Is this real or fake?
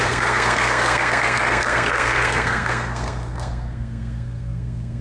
fake